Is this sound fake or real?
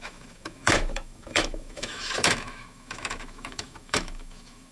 fake